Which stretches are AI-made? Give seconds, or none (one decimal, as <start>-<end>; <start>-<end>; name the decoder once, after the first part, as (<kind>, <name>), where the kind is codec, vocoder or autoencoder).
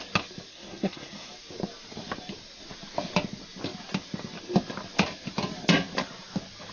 0.5-1.3 (codec, SNAC)